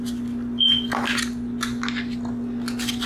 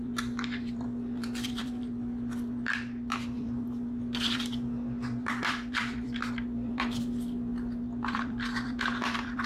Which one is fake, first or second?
second